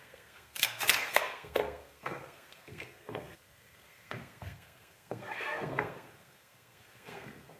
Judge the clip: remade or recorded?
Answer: remade